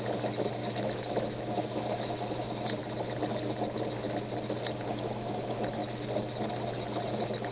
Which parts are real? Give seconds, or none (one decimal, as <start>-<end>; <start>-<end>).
0.0-0.6; 2.4-7.5